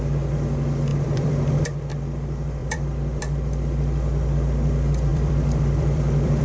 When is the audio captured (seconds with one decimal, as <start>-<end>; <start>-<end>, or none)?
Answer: 0.0-0.9; 1.6-2.6; 3.2-5.1